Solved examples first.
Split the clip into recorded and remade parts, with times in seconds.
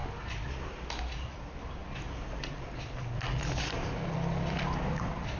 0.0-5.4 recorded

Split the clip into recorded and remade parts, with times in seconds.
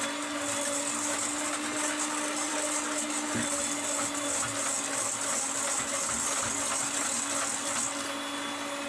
0.0-8.9 recorded